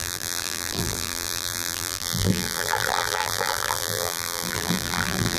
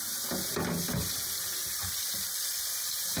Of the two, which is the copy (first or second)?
first